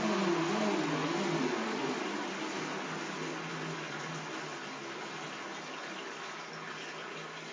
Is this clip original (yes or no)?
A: yes